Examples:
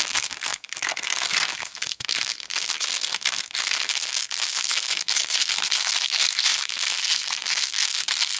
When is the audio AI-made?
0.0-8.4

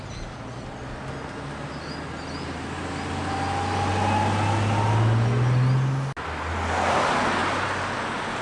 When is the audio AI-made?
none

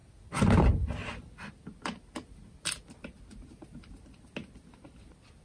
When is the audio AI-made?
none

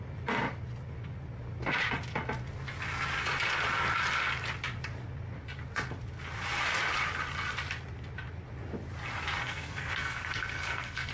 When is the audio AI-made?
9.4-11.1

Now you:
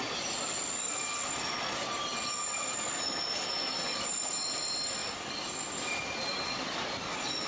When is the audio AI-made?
none

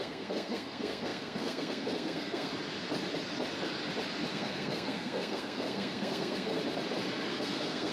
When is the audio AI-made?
0.0-2.5; 4.3-6.6; 7.3-7.9